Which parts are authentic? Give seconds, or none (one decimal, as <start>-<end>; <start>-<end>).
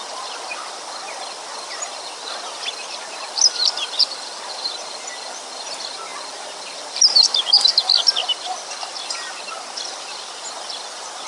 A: 0.0-11.3